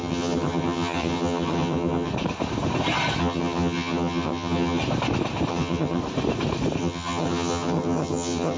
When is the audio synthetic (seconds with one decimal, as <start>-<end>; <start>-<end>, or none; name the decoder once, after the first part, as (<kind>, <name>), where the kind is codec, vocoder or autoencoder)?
0.0-2.1 (vocoder, HiFi-GAN); 3.2-4.8; 5.5-6.0; 6.8-8.6